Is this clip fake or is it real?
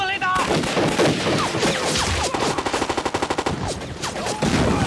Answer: real